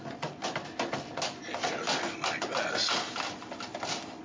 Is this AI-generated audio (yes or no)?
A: no